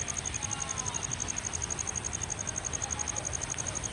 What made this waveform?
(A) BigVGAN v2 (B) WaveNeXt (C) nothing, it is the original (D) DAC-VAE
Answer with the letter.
C